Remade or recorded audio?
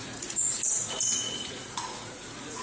remade